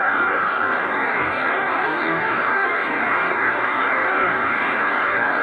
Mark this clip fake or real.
fake